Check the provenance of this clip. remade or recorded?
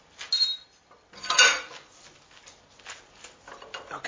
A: recorded